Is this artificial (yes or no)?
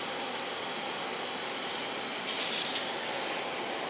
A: no